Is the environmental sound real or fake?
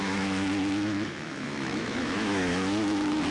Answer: fake